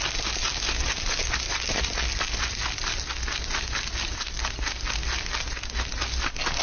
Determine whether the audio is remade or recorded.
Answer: recorded